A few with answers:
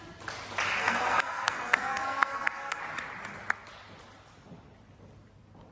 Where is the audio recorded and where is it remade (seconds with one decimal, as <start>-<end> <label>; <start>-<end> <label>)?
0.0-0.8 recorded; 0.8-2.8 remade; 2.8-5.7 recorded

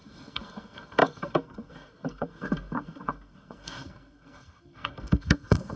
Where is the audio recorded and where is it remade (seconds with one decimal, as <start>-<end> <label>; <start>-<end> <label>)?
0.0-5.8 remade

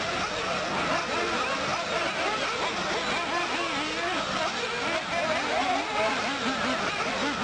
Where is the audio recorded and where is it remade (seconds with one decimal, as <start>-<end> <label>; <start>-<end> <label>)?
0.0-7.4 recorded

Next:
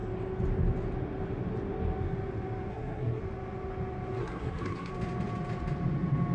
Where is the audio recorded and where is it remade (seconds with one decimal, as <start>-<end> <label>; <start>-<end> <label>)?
0.0-2.7 recorded; 2.7-3.2 remade; 3.2-4.2 recorded; 4.2-4.9 remade; 4.9-6.3 recorded